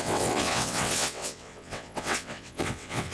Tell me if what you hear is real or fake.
fake